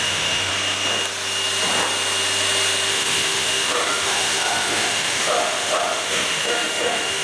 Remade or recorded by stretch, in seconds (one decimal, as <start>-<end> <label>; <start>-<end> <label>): 0.0-0.5 remade; 0.5-2.9 recorded; 2.9-7.2 remade